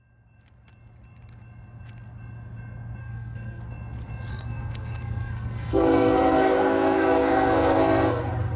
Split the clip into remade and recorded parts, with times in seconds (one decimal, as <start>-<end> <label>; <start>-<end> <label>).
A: 0.0-3.0 recorded; 3.0-3.6 remade; 3.6-4.3 recorded; 4.3-8.2 remade; 8.2-8.6 recorded